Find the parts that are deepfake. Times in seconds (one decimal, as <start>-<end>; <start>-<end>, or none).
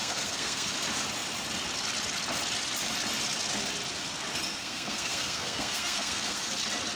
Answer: 0.0-0.7; 4.6-6.5